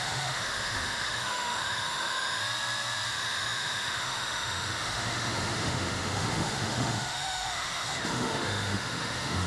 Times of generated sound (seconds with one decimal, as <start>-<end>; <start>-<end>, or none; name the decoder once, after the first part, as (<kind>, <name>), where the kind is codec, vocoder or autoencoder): 0.0-2.4 (autoencoder, DAC-VAE); 3.1-9.5